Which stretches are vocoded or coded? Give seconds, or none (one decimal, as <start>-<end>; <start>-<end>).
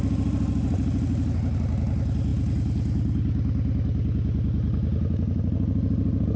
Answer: none